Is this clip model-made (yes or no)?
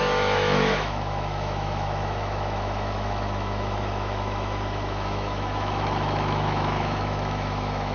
yes